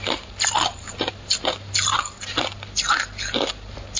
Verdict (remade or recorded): recorded